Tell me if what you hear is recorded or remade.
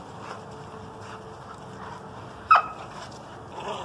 recorded